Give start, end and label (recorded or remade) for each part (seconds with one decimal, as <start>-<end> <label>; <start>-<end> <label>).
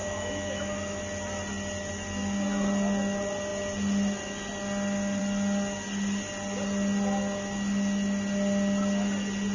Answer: 0.0-1.0 remade; 1.0-9.5 recorded